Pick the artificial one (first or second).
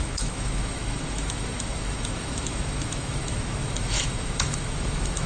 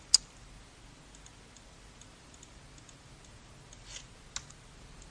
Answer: first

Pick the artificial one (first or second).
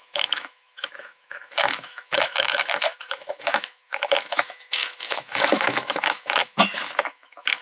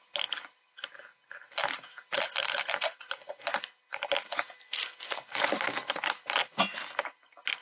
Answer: first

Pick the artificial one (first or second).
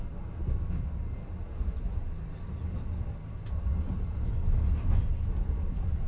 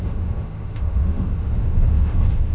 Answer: second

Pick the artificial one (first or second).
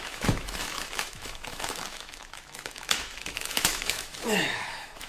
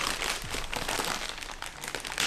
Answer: first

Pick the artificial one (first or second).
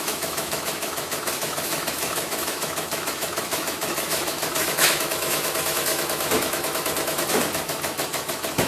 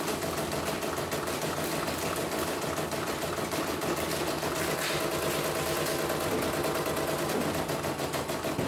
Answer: first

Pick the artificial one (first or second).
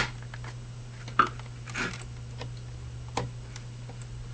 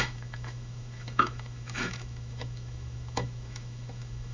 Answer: second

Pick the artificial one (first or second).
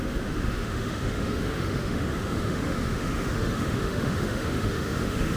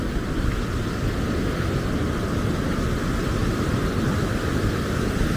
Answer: first